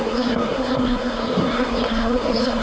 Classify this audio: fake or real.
fake